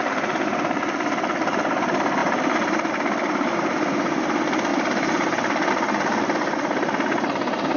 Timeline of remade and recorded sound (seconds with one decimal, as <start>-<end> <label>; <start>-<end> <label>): 0.0-2.2 recorded; 2.2-2.9 remade; 2.9-4.7 recorded; 4.7-5.7 remade; 5.7-7.8 recorded